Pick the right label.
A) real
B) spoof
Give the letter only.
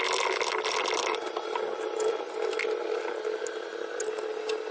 A